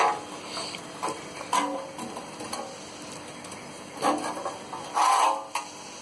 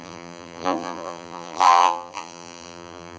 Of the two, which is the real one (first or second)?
first